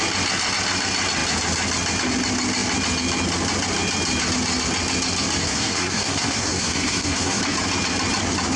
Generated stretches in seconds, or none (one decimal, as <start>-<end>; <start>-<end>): 5.4-7.4